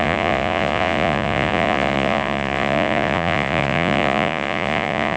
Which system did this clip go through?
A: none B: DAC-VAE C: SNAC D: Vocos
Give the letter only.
D